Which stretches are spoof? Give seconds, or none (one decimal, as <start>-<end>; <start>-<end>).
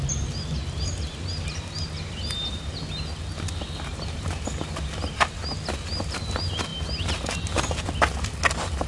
none